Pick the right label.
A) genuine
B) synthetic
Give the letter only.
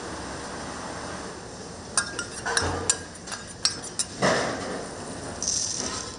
A